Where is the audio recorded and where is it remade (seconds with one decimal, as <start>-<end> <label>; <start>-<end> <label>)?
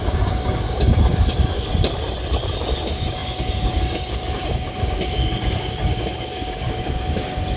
0.0-1.7 remade; 1.7-2.6 recorded; 2.6-7.6 remade